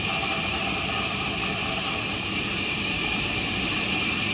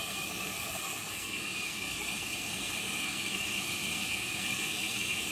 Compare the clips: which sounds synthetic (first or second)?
second